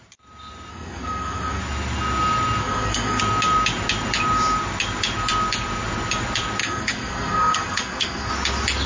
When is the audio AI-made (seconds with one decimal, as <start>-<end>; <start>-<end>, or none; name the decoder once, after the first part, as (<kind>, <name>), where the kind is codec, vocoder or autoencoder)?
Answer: 0.7-1.6 (codec, SNAC); 2.6-3.2; 6.6-8.3